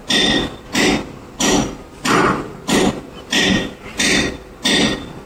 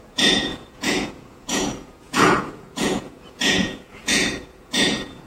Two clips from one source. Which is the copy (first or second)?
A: second